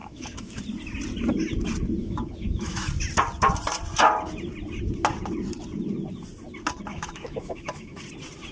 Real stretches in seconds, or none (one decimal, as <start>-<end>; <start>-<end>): 0.6-2.0; 2.9-6.9; 8.0-8.5